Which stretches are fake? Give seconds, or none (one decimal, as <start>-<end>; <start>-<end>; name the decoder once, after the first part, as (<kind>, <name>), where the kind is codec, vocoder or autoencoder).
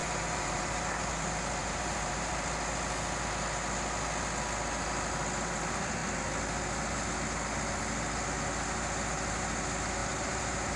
0.0-1.1 (vocoder, BigVGAN v2); 1.6-2.3; 10.0-10.8